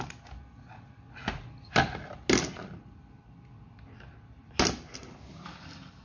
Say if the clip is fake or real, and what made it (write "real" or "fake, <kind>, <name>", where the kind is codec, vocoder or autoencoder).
real